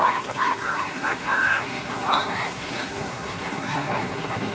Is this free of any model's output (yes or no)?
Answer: no